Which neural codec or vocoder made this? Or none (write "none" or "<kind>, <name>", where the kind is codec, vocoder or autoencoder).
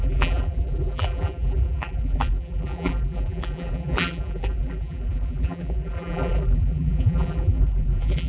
vocoder, BigVGAN v2